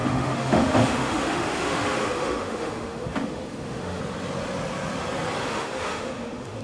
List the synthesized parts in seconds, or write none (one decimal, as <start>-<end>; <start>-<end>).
0.0-4.0; 5.4-6.6